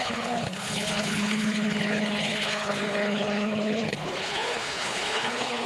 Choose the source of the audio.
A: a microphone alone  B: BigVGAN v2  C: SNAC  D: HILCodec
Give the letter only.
D